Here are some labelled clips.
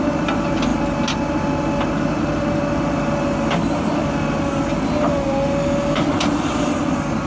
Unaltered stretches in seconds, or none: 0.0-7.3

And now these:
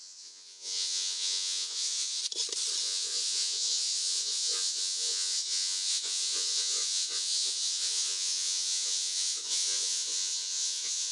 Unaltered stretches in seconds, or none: 2.2-2.8

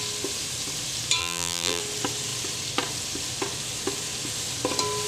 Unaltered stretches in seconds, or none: 0.0-1.2; 1.8-5.1